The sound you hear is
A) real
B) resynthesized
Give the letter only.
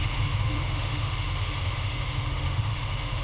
B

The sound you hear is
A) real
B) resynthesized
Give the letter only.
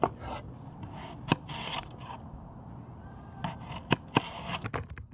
A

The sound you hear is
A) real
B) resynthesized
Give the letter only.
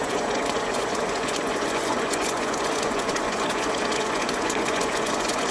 B